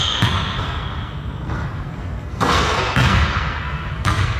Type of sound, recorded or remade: remade